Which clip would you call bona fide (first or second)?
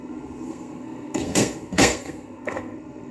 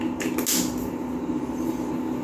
second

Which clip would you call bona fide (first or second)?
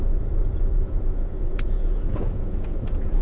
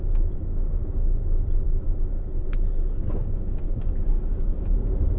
second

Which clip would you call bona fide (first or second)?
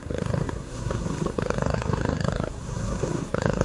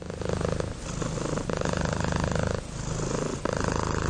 second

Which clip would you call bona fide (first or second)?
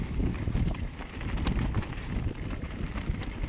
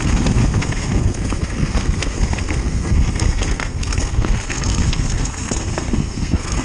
first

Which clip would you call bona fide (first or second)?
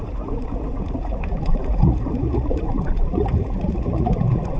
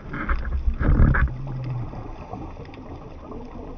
second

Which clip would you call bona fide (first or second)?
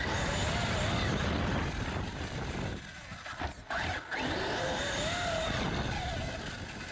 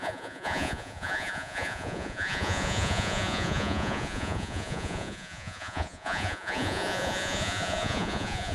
first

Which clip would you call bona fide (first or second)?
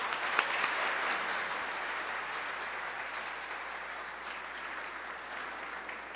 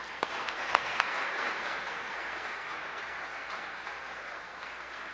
first